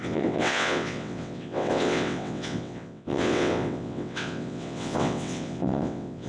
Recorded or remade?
remade